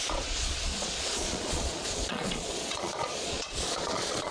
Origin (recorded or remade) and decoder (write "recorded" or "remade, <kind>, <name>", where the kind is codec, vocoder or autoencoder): remade, vocoder, Vocos